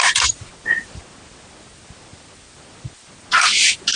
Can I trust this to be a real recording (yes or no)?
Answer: yes